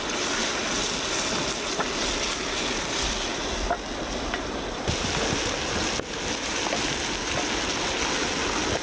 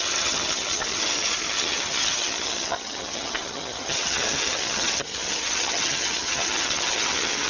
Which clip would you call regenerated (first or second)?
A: second